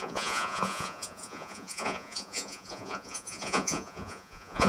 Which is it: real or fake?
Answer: fake